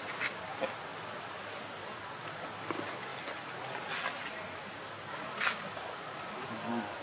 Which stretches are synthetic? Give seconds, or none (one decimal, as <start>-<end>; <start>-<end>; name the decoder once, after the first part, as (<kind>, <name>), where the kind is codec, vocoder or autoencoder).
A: none